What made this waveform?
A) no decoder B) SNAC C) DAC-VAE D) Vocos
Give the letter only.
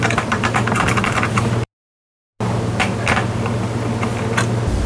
A